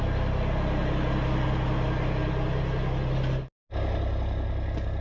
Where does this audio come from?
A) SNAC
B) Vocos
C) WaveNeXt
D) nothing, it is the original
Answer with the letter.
D